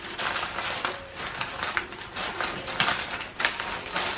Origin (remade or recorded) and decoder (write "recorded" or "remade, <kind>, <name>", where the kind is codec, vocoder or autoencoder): recorded